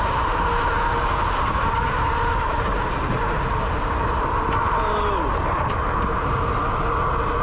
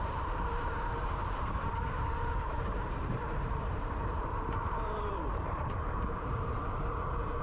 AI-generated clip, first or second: second